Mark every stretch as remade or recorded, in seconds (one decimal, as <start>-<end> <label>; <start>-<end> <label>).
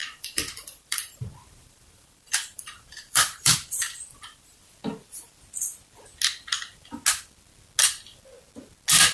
0.0-4.6 remade; 4.6-9.1 recorded